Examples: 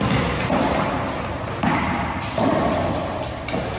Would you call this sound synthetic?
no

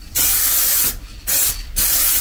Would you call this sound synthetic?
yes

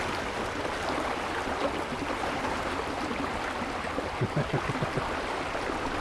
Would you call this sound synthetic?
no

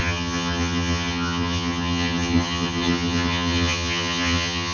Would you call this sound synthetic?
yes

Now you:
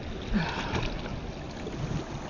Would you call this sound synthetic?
no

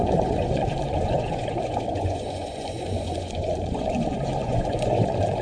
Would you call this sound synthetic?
yes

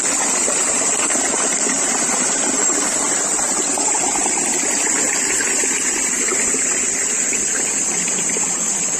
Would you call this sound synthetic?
no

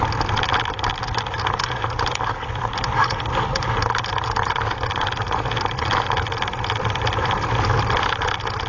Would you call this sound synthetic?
no